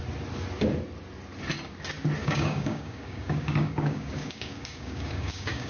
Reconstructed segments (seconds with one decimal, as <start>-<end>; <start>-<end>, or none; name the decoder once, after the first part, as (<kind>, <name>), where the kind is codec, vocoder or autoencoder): 2.2-5.7 (codec, DAC)